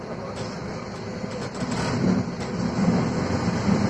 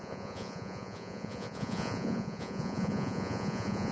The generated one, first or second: second